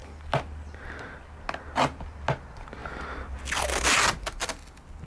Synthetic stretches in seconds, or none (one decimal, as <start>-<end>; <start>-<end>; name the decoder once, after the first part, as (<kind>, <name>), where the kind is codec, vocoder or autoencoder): none